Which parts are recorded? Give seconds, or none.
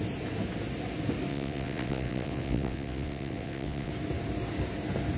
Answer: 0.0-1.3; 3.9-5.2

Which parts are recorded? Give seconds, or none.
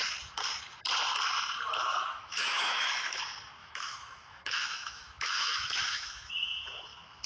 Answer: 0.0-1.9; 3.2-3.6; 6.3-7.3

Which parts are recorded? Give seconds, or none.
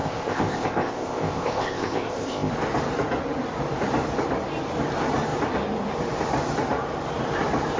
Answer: 2.5-7.8